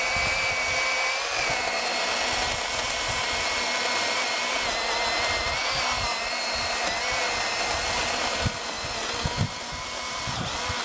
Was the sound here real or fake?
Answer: real